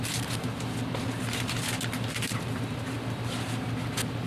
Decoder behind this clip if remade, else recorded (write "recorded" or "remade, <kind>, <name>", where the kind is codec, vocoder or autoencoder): recorded